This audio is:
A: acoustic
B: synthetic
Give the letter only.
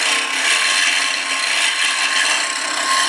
A